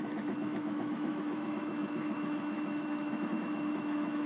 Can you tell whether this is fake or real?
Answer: fake